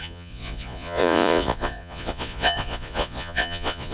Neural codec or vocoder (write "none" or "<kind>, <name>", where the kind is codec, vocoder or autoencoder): vocoder, Vocos